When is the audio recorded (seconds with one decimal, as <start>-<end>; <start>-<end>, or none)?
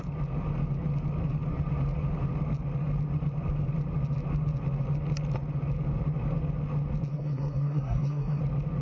0.0-7.1; 8.4-8.8